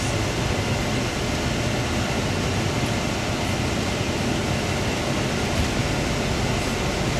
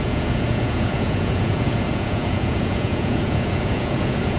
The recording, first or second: first